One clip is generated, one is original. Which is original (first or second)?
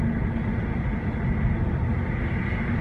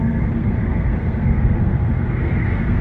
first